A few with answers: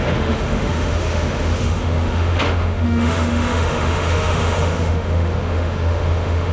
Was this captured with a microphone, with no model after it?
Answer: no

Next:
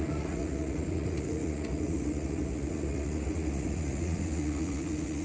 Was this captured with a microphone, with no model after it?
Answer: no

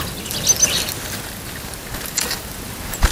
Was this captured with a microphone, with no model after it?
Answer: yes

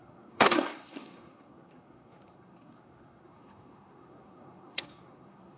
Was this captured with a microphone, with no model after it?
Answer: no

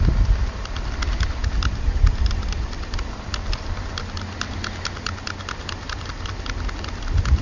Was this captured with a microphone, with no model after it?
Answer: yes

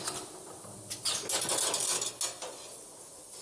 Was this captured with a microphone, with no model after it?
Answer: yes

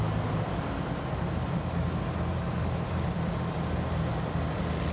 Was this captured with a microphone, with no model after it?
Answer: no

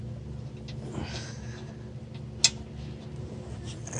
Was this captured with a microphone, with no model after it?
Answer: yes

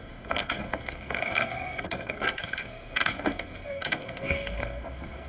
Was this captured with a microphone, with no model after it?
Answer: no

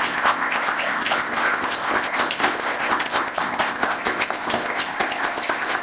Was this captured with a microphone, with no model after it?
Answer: no